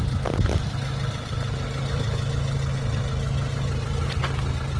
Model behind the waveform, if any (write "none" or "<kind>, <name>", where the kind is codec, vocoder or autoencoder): none